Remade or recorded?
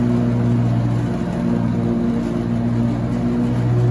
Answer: recorded